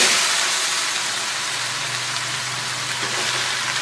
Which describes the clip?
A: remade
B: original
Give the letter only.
B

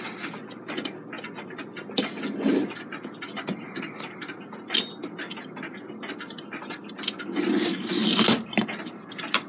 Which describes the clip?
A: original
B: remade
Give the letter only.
A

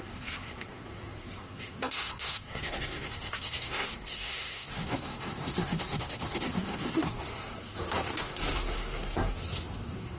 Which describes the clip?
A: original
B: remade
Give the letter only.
B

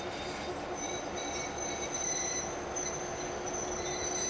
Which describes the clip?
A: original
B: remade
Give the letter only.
A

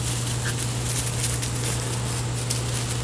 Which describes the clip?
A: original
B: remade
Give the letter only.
A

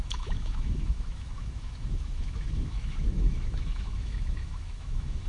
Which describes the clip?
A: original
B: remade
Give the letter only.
B